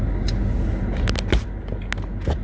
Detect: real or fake real